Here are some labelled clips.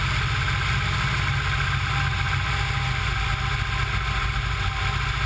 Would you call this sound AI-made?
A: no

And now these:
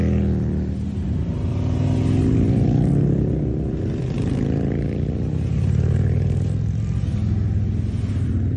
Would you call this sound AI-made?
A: no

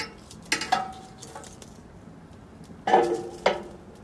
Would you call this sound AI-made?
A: no